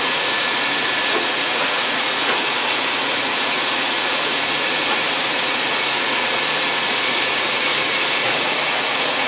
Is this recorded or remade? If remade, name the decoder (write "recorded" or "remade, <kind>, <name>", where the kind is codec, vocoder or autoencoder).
remade, vocoder, Vocos